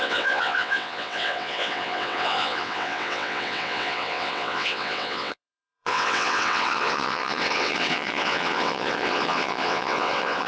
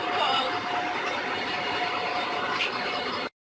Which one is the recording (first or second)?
second